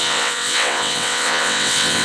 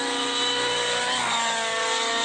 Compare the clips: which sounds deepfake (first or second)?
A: first